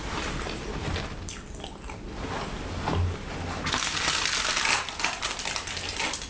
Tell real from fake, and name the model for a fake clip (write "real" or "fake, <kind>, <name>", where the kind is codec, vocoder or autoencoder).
real